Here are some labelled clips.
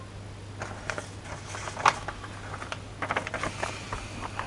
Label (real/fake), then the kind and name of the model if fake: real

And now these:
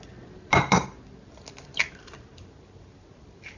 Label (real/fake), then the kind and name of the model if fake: real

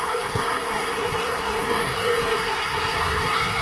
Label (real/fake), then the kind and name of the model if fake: fake, codec, SNAC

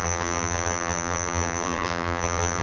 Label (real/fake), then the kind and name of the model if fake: fake, vocoder, BigVGAN v2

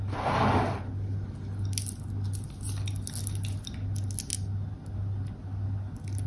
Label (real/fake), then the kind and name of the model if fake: real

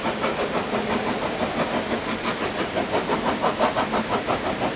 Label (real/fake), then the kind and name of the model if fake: real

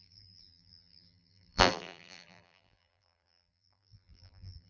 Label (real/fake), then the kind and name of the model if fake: fake, vocoder, BigVGAN v2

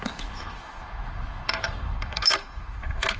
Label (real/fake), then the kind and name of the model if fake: fake, autoencoder, DAC-VAE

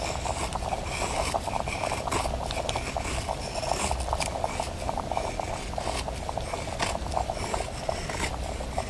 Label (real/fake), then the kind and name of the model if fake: real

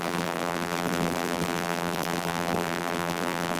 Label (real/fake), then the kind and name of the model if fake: fake, vocoder, BigVGAN v2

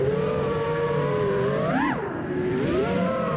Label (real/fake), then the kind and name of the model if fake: fake, vocoder, BigVGAN v2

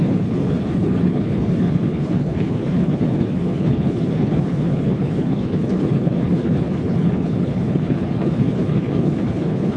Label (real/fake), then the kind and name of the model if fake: fake, codec, HILCodec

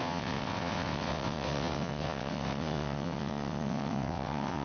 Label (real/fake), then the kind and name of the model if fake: fake, vocoder, WaveNeXt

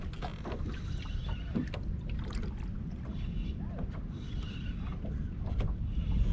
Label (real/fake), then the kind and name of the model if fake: real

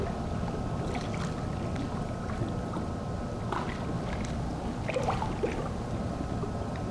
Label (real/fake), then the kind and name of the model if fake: real